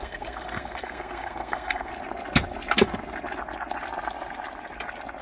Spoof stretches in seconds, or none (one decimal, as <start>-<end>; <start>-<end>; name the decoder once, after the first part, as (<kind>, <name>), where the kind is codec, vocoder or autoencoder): 0.0-1.9 (codec, SNAC)